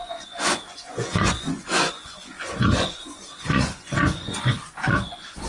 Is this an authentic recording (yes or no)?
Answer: no